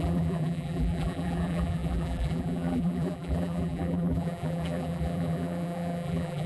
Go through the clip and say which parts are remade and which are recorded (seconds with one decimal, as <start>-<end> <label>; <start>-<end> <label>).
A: 0.0-6.5 remade